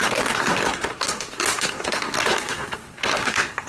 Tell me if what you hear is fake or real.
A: fake